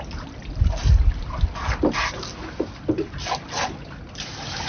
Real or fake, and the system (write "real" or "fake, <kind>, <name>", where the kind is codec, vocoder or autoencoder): real